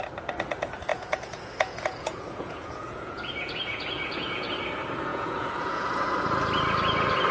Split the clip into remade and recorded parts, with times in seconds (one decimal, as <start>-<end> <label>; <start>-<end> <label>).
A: 0.0-0.9 recorded; 0.9-4.5 remade; 4.5-5.1 recorded; 5.1-6.0 remade; 6.0-7.3 recorded